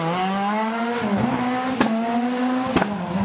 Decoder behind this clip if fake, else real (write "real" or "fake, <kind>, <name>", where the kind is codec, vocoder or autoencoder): real